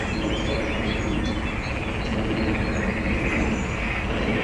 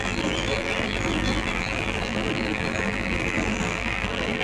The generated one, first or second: second